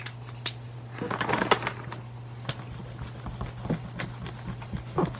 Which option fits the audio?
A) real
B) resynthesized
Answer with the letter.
A